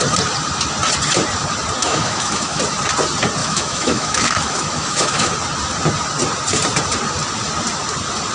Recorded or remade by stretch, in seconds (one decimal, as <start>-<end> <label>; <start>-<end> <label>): 0.0-1.8 recorded; 1.8-2.6 remade; 2.6-3.4 recorded; 3.4-5.3 remade; 5.3-8.3 recorded